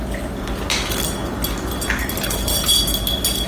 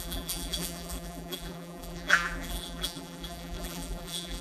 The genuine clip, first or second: first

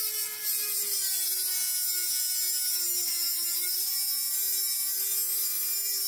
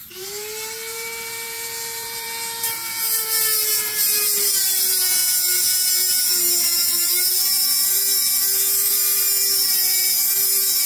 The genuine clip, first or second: first